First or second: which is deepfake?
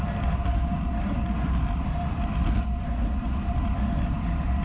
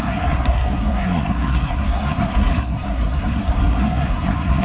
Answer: second